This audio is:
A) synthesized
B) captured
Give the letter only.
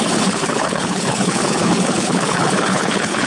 A